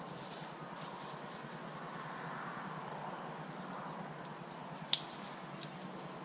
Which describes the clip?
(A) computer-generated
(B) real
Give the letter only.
B